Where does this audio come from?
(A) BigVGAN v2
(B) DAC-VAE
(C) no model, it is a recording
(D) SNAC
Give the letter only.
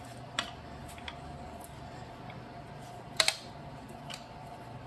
C